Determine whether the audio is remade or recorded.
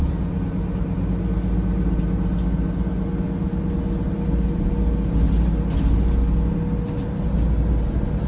recorded